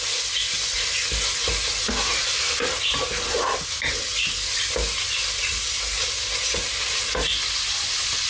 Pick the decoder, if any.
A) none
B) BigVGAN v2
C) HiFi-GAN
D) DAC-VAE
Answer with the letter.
A